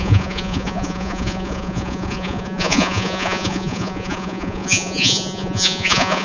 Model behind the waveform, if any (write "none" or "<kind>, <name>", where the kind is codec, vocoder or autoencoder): vocoder, Vocos